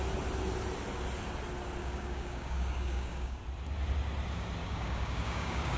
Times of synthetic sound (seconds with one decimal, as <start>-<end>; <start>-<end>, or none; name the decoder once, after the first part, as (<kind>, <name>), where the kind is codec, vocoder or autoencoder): 1.8-3.4 (codec, DAC); 4.6-5.8